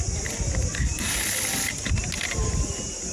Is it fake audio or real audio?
real